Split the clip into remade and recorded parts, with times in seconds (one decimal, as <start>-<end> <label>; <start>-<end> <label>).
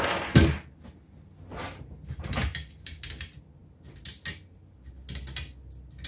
0.0-6.1 recorded